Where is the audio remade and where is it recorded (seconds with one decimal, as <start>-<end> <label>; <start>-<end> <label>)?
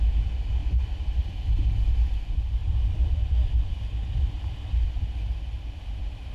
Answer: 0.0-2.6 recorded; 2.6-5.0 remade; 5.0-6.3 recorded